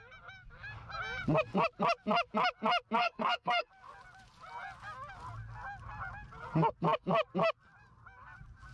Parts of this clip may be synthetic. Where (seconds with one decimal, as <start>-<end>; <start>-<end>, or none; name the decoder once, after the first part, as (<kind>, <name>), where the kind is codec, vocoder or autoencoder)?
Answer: 3.0-3.7 (codec, SNAC)